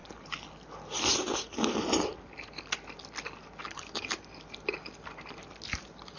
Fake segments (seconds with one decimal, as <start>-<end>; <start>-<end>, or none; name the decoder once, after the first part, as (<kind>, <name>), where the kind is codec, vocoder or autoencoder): none